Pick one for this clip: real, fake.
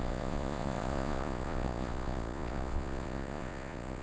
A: fake